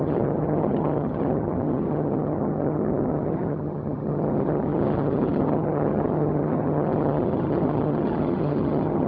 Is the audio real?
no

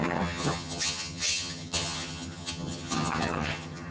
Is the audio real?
no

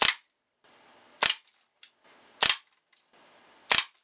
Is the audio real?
yes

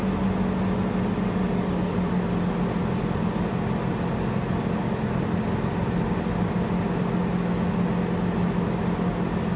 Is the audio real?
yes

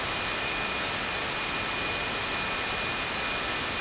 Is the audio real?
yes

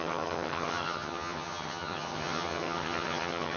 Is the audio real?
no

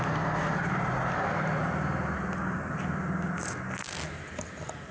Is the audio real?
yes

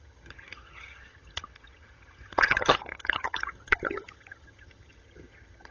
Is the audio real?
no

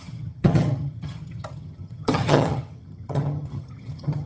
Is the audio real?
no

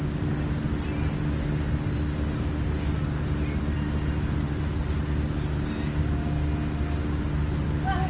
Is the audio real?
yes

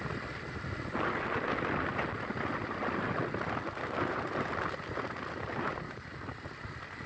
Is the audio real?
yes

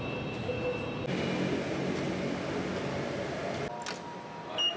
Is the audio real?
yes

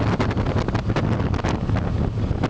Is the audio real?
yes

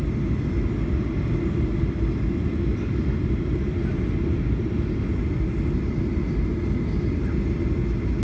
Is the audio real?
yes